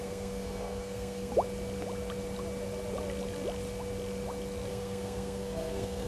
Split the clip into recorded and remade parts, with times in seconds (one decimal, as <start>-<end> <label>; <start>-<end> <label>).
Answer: 0.0-1.3 remade; 1.3-4.7 recorded; 4.7-6.1 remade